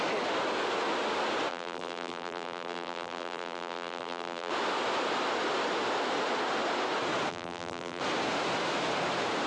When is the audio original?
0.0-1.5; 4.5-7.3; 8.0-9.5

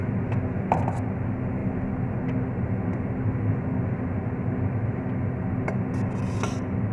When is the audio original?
0.0-6.9

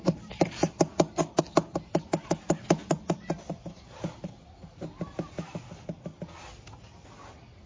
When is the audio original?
0.0-2.8; 4.3-7.7

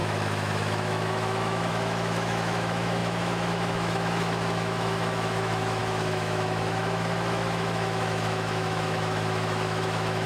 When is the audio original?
none

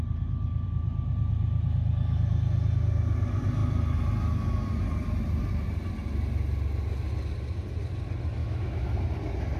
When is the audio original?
0.0-8.4; 8.9-9.6

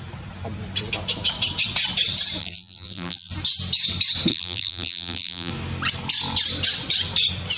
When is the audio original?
0.0-2.4; 3.3-4.3; 5.5-7.6

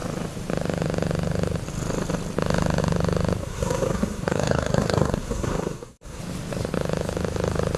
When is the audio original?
0.0-3.4; 6.2-7.8

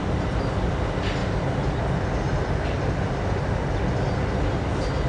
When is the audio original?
0.0-5.1